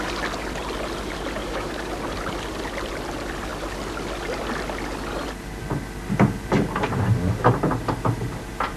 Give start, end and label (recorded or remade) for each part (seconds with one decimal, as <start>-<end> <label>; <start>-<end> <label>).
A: 0.0-1.4 recorded; 1.4-1.9 remade; 1.9-8.8 recorded